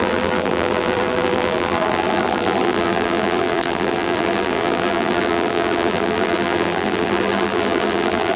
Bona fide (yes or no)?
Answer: no